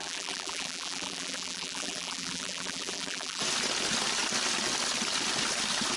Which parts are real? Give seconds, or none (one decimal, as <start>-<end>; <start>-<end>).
3.4-6.0